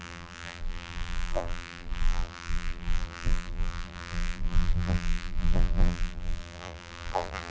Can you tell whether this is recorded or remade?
remade